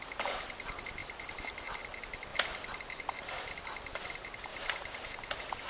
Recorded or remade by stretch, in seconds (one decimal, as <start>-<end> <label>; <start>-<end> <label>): 0.0-4.5 recorded; 4.5-5.3 remade; 5.3-5.7 recorded